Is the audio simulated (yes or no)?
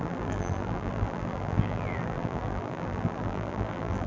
yes